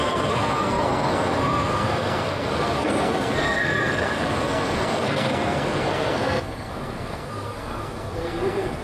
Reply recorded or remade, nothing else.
remade